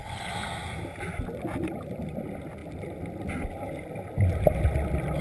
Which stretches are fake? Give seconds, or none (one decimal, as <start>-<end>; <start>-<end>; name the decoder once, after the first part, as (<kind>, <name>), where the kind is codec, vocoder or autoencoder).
0.0-2.6 (vocoder, BigVGAN v2)